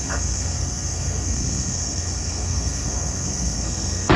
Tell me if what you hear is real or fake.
fake